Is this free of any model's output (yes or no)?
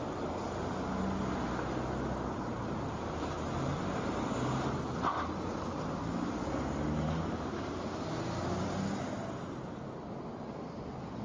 yes